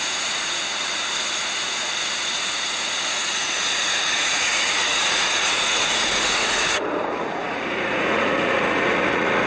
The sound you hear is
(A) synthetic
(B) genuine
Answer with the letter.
A